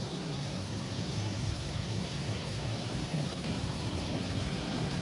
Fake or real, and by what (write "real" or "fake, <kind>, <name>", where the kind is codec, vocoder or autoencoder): fake, codec, SNAC